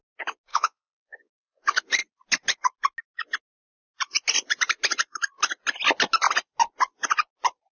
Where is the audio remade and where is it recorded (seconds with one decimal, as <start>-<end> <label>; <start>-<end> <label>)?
0.0-0.5 recorded; 0.5-1.6 remade; 1.6-7.7 recorded